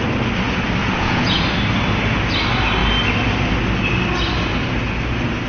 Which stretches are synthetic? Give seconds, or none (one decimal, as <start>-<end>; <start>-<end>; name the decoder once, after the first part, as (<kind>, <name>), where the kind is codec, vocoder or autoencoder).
0.8-1.4 (vocoder, Vocos)